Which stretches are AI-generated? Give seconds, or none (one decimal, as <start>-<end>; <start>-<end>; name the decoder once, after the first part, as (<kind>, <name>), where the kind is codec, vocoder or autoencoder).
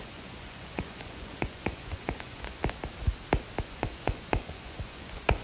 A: 0.0-2.6 (vocoder, Vocos); 3.6-5.4